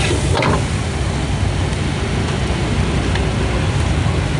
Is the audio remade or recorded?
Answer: recorded